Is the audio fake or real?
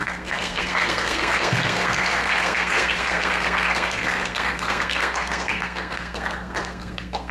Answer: fake